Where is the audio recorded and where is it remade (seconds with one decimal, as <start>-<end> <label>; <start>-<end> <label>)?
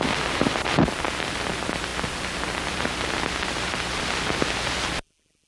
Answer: 0.0-5.5 recorded